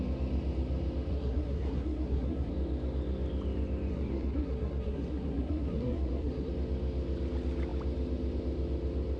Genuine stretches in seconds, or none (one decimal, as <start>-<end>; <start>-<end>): 0.0-1.1; 2.5-3.9; 6.5-9.2